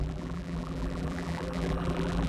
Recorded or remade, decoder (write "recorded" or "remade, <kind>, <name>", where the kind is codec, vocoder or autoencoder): remade, vocoder, BigVGAN v2